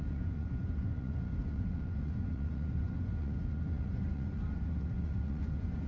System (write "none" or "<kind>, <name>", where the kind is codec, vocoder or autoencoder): vocoder, Vocos